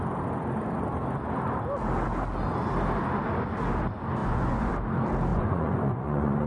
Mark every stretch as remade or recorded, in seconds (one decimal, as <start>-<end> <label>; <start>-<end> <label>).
0.0-4.2 recorded; 4.2-4.7 remade; 4.7-5.3 recorded; 5.3-6.5 remade

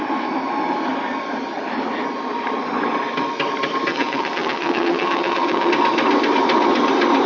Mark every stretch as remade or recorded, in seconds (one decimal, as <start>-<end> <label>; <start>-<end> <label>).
0.0-3.9 recorded; 3.9-5.7 remade; 5.7-7.3 recorded

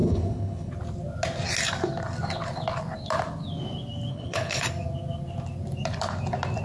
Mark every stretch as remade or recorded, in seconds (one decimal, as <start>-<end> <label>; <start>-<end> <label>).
0.0-0.7 remade; 0.7-4.1 recorded; 4.1-4.6 remade; 4.6-6.6 recorded

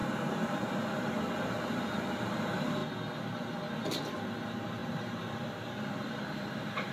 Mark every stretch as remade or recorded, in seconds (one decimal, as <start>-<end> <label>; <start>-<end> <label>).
0.0-1.1 remade; 1.1-4.8 recorded; 4.8-6.9 remade

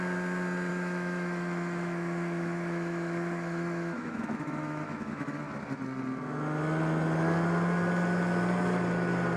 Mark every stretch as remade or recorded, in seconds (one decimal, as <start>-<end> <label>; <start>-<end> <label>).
0.0-0.7 recorded; 0.7-5.4 remade; 5.4-9.4 recorded